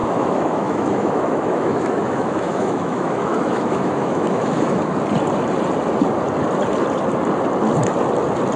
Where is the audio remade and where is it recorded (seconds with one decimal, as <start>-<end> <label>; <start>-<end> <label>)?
0.0-4.8 remade; 4.8-8.6 recorded